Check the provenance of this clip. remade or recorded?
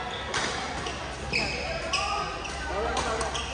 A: recorded